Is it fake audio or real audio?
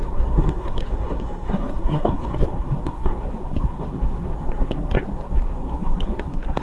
fake